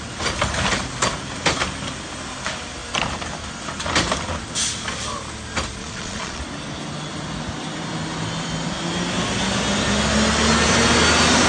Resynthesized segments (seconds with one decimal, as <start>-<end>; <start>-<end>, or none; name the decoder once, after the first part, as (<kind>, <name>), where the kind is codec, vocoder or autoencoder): 5.8-6.4 (vocoder, Vocos)